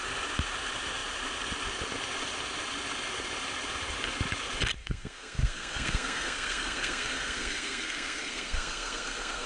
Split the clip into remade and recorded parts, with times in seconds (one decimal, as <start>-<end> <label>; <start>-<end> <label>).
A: 0.0-4.8 recorded; 4.8-9.5 remade